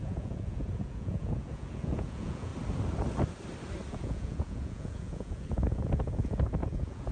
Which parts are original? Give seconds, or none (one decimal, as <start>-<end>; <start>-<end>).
2.5-3.9